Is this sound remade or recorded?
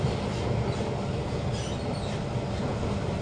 recorded